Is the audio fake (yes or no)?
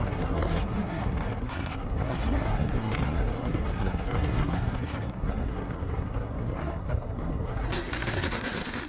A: yes